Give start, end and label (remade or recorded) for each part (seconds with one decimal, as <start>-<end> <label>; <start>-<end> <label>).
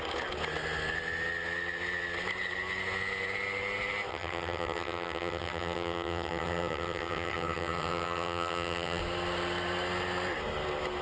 0.0-4.1 recorded; 4.1-9.0 remade; 9.0-11.0 recorded